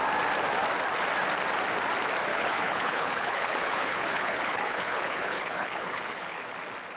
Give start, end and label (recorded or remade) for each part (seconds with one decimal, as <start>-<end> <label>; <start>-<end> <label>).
0.0-2.3 recorded; 2.3-6.5 remade; 6.5-7.0 recorded